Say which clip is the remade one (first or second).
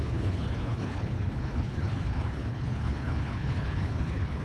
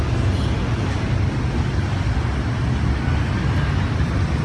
first